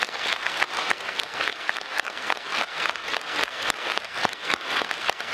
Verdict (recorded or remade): remade